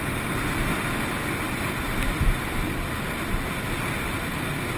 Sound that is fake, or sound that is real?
real